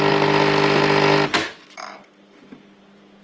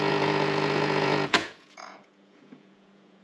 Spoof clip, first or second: second